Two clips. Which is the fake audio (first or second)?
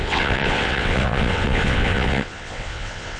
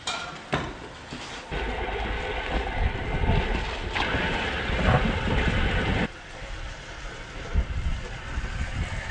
first